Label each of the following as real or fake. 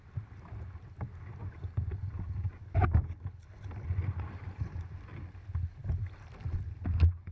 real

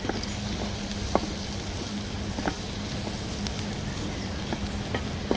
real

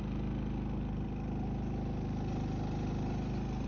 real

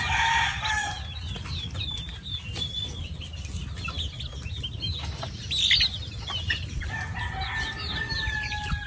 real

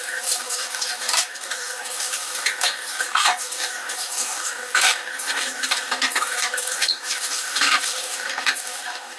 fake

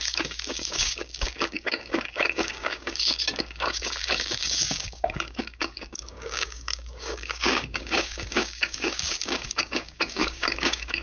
fake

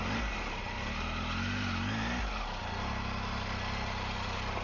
real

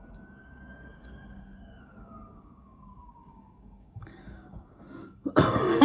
fake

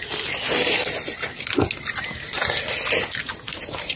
real